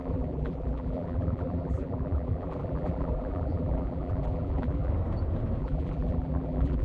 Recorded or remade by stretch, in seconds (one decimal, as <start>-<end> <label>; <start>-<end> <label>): 0.0-4.9 remade; 4.9-5.6 recorded; 5.6-6.8 remade